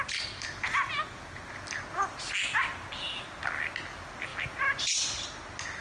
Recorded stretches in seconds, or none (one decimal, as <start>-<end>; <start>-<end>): 0.0-5.8